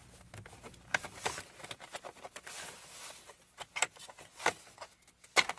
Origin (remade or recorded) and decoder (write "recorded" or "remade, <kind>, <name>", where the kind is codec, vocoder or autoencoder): recorded